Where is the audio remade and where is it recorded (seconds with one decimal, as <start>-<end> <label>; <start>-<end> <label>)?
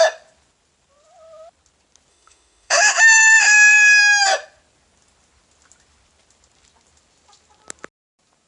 0.0-2.1 recorded; 2.1-4.0 remade; 4.0-8.5 recorded